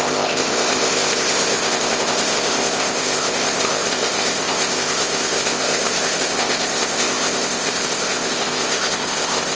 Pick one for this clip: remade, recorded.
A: remade